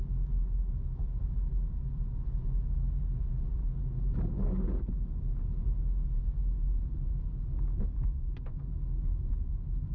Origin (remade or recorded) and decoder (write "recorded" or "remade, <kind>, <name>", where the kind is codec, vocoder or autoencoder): recorded